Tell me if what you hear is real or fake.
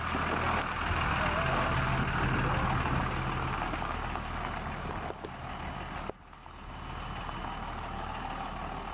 real